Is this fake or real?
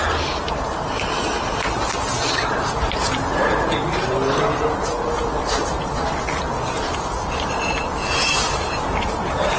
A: real